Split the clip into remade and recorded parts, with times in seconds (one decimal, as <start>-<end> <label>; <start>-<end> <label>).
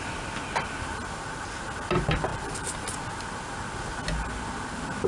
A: 0.0-2.3 recorded; 2.3-2.9 remade; 2.9-5.1 recorded